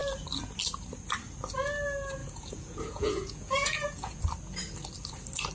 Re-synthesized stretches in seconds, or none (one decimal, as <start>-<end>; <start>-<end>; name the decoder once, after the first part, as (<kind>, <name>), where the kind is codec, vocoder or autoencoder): 2.2-4.2 (vocoder, Vocos)